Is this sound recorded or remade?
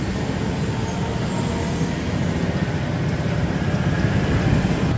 recorded